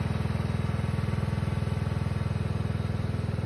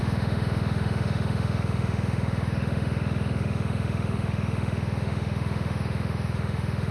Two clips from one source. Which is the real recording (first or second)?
first